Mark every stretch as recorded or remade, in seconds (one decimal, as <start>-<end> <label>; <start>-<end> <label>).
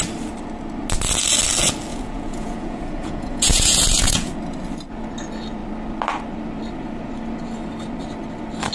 0.0-1.9 recorded; 1.9-4.3 remade; 4.3-8.7 recorded